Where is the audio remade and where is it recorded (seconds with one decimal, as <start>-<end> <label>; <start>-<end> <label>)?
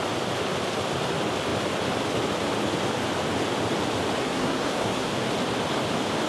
0.0-4.2 recorded; 4.2-5.1 remade; 5.1-6.3 recorded